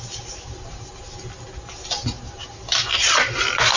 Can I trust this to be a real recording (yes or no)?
yes